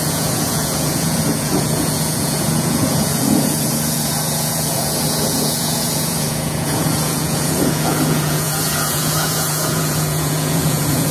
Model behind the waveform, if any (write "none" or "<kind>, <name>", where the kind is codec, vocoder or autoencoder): vocoder, Vocos